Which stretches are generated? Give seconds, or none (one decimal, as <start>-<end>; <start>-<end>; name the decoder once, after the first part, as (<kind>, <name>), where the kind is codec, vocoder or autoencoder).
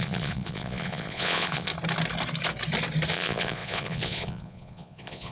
0.0-1.7 (vocoder, Vocos); 3.1-5.3